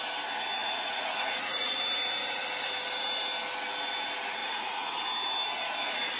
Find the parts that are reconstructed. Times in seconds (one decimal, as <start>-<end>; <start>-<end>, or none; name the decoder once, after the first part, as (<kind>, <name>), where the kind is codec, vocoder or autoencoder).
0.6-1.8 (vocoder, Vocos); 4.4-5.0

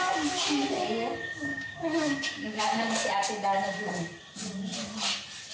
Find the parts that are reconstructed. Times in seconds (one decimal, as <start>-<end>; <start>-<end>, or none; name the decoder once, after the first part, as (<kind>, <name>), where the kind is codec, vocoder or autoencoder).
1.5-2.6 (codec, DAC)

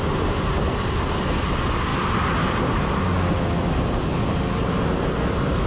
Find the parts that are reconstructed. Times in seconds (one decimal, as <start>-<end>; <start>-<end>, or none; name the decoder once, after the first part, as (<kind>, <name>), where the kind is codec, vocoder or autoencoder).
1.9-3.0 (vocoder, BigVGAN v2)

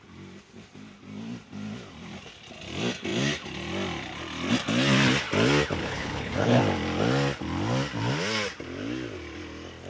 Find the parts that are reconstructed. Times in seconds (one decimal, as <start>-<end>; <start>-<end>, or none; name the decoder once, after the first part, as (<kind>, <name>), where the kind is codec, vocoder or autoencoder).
5.8-6.6 (codec, HILCodec)

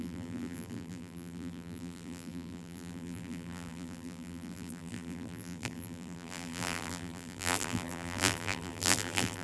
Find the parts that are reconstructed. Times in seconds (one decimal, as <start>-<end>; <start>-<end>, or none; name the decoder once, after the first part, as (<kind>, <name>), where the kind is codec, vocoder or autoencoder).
0.0-9.4 (vocoder, BigVGAN v2)

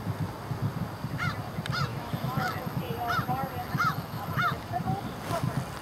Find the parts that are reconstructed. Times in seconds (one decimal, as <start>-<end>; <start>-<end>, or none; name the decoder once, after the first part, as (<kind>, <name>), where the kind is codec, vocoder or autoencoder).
1.9-2.8 (autoencoder, DAC-VAE); 3.6-4.7

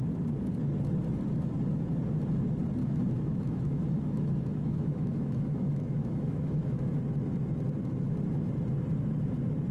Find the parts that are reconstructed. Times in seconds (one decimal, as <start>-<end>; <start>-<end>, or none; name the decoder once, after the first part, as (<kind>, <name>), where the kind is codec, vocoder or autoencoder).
2.8-7.0 (autoencoder, DAC-VAE)

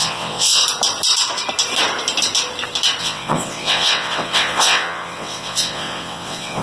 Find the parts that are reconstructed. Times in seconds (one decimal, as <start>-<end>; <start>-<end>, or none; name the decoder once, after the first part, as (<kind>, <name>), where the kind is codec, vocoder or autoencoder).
0.0-0.6 (vocoder, WaveNeXt); 3.0-6.6